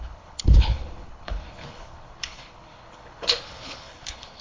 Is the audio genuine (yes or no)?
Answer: no